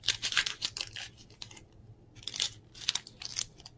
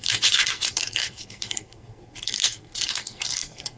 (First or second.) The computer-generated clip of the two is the second